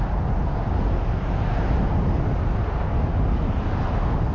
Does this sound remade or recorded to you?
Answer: recorded